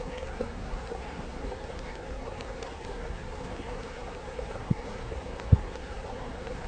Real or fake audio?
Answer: fake